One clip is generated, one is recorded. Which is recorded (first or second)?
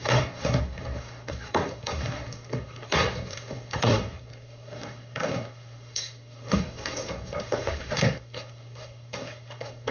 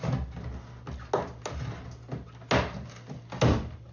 second